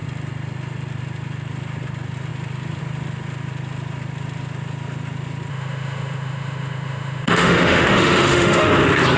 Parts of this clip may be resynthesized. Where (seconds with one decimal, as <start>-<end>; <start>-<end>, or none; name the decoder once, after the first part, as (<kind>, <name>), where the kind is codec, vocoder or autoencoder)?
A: 5.5-8.7 (autoencoder, DAC-VAE)